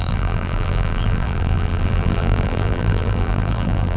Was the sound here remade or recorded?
remade